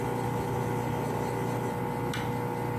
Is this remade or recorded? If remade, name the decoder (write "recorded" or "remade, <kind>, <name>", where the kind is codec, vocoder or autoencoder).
recorded